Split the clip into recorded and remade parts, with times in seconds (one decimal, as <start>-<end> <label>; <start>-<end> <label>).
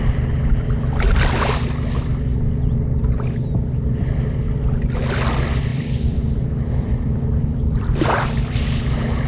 0.0-5.7 recorded; 5.7-7.9 remade; 7.9-9.3 recorded